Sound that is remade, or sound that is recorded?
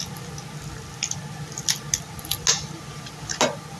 recorded